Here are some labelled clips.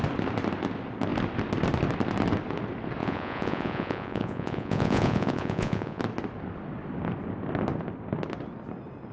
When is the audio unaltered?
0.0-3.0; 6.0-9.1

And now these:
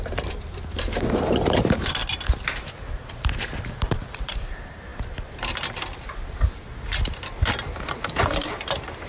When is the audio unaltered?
2.0-3.6

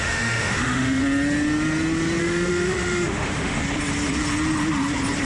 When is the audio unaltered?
1.0-2.2; 3.6-5.2

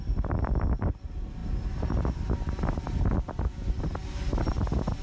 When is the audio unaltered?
0.0-5.0

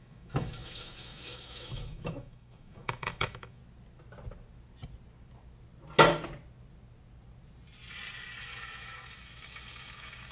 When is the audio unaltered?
3.6-8.4

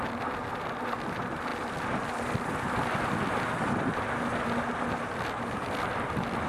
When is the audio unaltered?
0.0-6.5